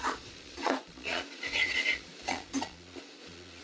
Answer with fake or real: fake